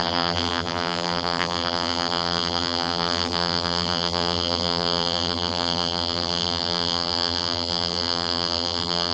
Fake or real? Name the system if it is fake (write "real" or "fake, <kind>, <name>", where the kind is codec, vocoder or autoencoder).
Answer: fake, vocoder, BigVGAN v2